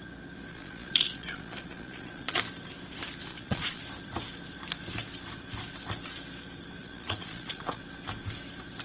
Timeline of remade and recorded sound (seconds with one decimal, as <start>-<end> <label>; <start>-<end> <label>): 0.0-0.5 recorded; 0.5-2.4 remade; 2.4-3.3 recorded; 3.3-3.8 remade; 3.8-6.8 recorded; 6.8-7.8 remade; 7.8-8.8 recorded